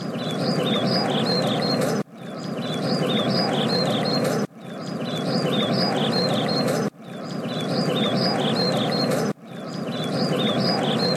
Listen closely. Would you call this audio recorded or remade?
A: recorded